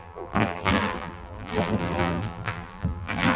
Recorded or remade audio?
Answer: remade